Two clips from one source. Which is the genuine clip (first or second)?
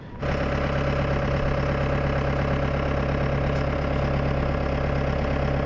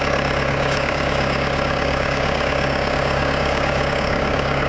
first